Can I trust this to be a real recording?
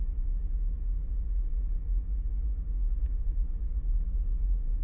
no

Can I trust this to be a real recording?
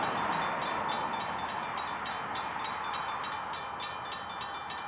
yes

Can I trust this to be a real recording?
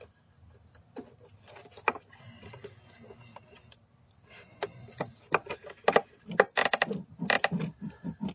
yes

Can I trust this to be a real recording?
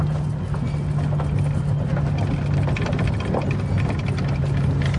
yes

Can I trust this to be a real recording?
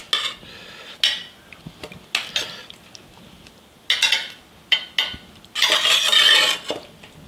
yes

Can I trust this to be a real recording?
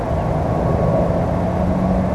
yes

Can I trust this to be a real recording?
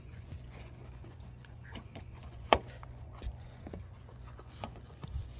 no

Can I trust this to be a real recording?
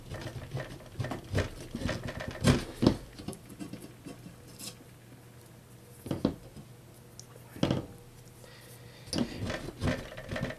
yes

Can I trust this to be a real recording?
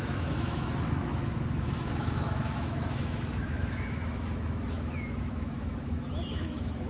no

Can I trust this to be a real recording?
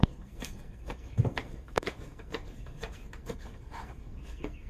no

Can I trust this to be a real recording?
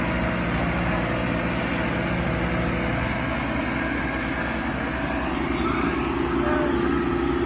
yes